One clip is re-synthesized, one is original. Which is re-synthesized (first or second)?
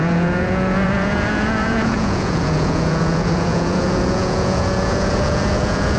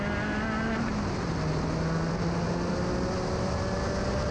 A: first